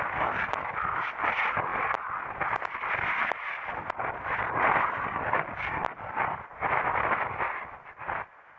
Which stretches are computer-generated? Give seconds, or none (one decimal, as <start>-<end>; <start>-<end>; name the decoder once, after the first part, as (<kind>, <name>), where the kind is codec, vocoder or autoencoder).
none